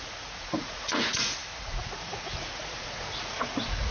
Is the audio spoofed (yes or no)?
yes